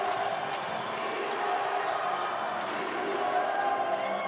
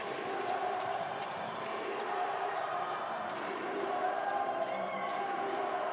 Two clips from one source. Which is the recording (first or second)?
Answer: first